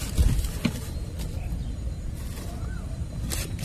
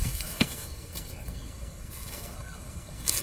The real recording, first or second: first